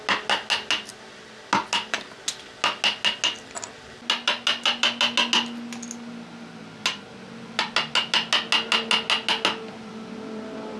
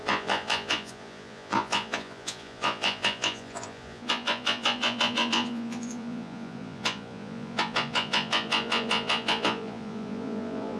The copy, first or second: second